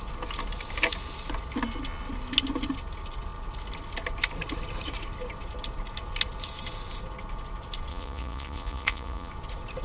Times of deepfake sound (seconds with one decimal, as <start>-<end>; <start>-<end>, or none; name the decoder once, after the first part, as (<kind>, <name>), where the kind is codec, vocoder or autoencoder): 7.9-9.3 (vocoder, Vocos)